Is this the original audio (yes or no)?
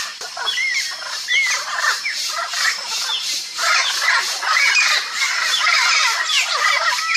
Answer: yes